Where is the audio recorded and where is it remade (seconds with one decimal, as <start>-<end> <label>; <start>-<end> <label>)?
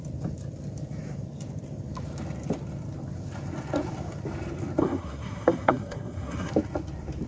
0.0-4.8 recorded; 4.8-6.5 remade; 6.5-7.3 recorded